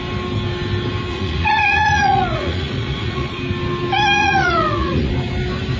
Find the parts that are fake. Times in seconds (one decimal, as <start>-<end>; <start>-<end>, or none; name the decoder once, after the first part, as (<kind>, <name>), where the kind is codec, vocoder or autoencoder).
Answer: 1.1-3.4 (vocoder, Vocos); 4.2-5.1